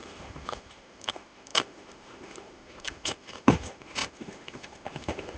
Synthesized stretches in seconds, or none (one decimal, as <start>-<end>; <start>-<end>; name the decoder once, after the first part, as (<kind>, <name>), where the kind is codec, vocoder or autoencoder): 0.0-5.4 (autoencoder, DAC-VAE)